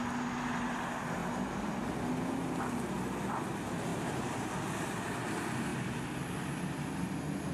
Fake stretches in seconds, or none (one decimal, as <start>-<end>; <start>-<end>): 1.2-1.9; 3.9-4.5